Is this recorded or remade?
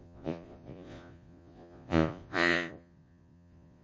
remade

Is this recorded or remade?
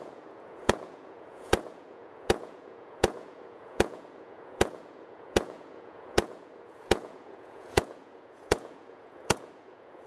remade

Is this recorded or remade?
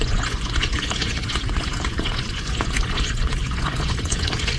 remade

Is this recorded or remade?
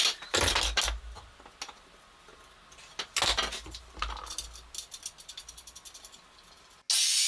recorded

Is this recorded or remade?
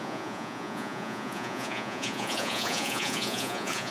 remade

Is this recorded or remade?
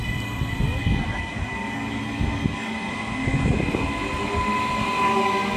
recorded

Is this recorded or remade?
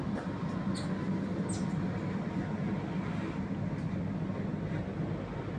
recorded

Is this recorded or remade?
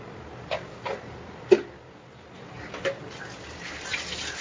recorded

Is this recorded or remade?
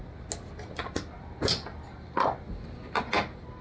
recorded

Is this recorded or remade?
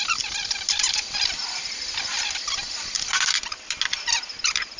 recorded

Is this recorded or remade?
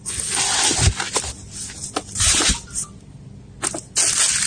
recorded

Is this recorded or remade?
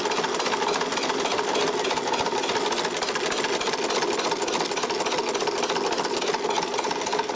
recorded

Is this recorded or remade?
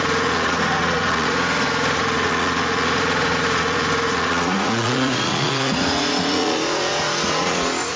remade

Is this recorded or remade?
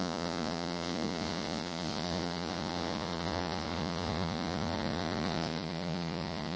remade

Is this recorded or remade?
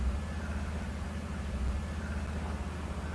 recorded